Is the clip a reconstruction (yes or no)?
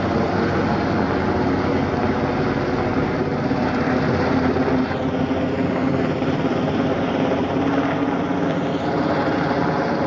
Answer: no